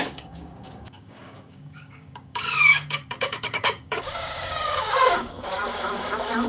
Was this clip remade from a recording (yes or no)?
yes